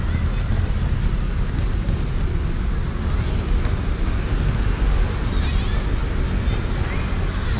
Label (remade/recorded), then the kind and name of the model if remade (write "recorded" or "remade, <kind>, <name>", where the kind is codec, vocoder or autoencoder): recorded